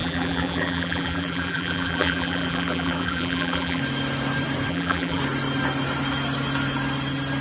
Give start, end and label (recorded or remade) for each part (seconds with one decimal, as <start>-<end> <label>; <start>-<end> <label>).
0.0-3.8 remade; 3.8-4.7 recorded; 4.7-5.2 remade; 5.2-7.4 recorded

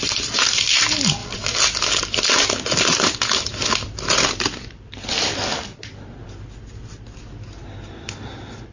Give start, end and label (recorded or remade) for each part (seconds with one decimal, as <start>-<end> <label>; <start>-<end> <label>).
0.0-1.2 recorded; 1.2-2.5 remade; 2.5-3.6 recorded; 3.6-5.4 remade; 5.4-8.7 recorded